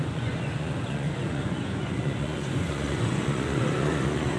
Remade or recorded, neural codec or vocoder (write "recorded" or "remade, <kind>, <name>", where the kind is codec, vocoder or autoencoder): remade, vocoder, Vocos